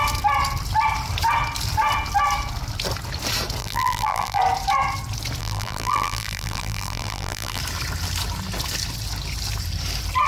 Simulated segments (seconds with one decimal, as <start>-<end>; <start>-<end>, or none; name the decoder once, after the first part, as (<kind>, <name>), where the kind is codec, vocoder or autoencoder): 3.6-4.4 (vocoder, BigVGAN v2); 5.4-7.6

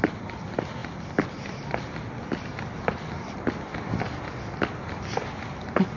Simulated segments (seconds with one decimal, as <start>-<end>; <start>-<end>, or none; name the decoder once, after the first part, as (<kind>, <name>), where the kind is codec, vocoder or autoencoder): 0.8-1.8 (vocoder, BigVGAN v2); 2.5-4.9

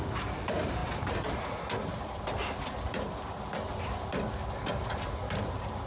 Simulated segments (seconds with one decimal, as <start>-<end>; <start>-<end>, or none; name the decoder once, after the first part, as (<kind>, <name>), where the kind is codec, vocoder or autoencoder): none

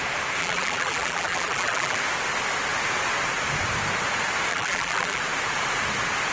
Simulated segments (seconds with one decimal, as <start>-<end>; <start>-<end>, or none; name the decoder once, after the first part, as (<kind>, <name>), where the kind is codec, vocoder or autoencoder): 0.4-2.0 (vocoder, BigVGAN v2); 4.5-5.2

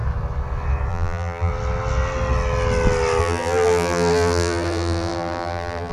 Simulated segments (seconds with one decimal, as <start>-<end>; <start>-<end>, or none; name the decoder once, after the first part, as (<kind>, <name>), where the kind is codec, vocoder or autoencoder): 0.9-1.5 (vocoder, BigVGAN v2); 3.2-5.9